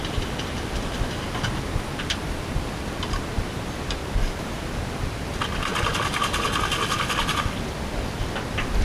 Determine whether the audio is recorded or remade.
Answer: recorded